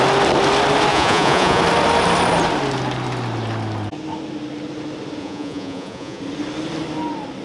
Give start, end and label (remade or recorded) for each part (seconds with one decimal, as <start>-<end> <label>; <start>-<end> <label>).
0.0-0.9 recorded; 0.9-1.6 remade; 1.6-5.2 recorded; 5.2-6.2 remade; 6.2-7.4 recorded